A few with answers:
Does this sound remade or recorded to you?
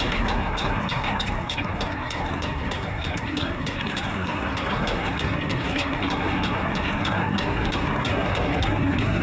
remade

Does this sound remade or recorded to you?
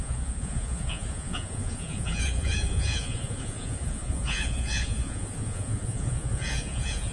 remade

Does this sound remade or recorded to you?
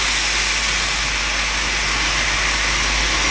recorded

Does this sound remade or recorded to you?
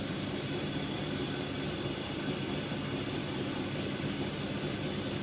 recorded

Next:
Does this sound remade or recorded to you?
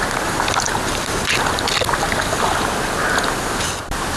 recorded